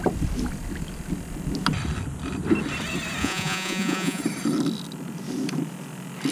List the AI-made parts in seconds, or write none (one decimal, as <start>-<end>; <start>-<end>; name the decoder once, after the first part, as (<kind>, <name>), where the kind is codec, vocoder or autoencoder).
3.2-4.2 (vocoder, Vocos)